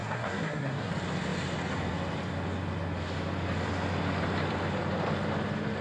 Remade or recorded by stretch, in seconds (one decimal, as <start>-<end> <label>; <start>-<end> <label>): 0.0-0.9 remade; 0.9-5.8 recorded